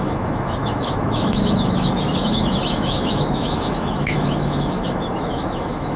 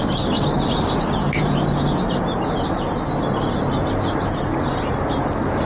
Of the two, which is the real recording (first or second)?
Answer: second